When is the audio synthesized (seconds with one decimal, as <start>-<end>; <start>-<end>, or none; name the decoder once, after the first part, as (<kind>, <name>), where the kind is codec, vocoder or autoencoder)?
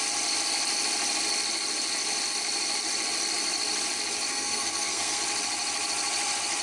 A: 4.3-5.2 (codec, SNAC)